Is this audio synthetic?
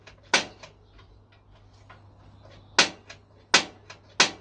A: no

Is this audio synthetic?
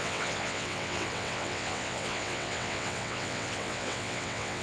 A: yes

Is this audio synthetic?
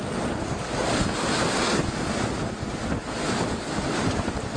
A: no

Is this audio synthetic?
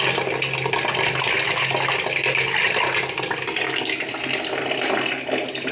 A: no